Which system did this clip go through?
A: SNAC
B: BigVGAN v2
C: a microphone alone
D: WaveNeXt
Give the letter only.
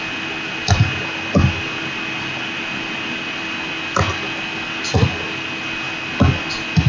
C